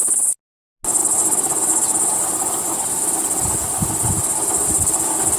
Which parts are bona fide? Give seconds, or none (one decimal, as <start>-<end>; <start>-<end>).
0.0-5.4